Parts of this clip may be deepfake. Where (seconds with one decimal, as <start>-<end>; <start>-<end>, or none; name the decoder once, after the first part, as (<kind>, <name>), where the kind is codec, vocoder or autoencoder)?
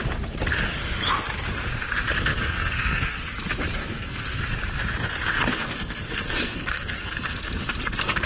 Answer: 2.3-3.2 (codec, SNAC); 3.8-4.4; 5.5-7.3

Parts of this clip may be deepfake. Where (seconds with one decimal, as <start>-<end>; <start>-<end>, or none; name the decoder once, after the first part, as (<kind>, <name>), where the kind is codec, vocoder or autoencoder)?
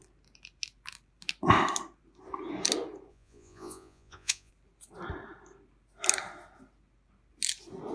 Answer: 3.1-4.5 (vocoder, Vocos)